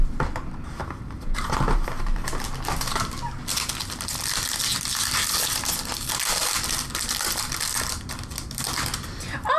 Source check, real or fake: real